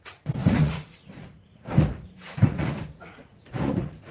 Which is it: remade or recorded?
remade